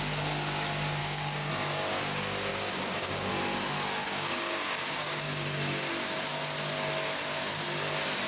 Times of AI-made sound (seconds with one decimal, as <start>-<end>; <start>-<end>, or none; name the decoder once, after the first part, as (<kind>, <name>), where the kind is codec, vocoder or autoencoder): 1.0-1.5 (codec, DAC); 2.5-3.3; 4.0-5.9